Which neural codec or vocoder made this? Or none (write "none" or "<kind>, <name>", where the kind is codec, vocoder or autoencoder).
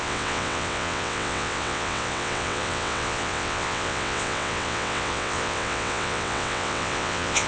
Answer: vocoder, WaveNeXt